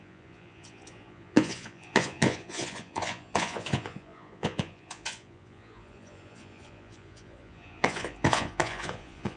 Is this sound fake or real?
fake